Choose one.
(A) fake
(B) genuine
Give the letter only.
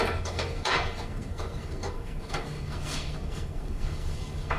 A